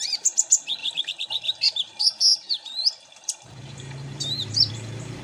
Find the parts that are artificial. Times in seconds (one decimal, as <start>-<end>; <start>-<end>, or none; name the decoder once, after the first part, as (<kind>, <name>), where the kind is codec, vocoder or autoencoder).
0.8-1.9 (vocoder, BigVGAN v2); 2.3-4.7